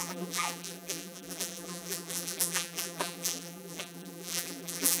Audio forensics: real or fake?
fake